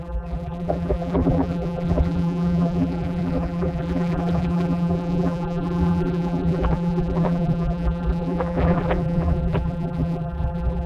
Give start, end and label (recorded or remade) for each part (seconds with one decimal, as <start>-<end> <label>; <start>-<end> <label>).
0.0-10.9 remade